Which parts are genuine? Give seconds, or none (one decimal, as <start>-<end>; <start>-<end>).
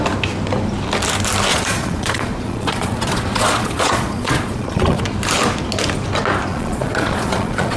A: 0.0-1.5; 5.0-6.5